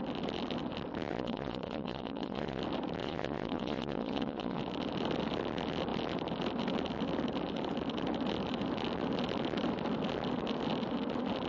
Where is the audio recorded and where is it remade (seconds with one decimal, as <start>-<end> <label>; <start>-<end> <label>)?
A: 0.0-1.1 recorded; 1.1-2.6 remade; 2.6-3.0 recorded; 3.0-4.6 remade; 4.6-11.5 recorded